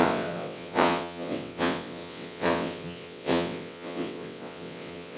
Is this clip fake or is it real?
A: fake